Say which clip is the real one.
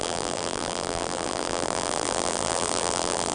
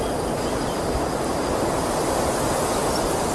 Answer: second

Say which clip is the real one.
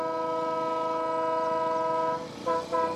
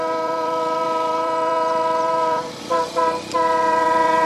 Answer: first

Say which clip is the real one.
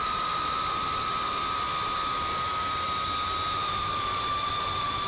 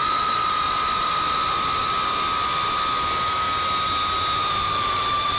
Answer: second